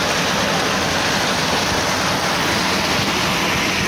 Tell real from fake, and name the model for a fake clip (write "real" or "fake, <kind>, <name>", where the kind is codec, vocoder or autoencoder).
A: real